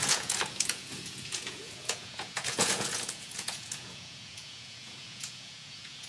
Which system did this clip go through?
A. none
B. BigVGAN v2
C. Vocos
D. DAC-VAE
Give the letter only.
C